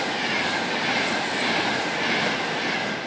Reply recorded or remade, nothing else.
recorded